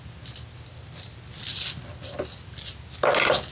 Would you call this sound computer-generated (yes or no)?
no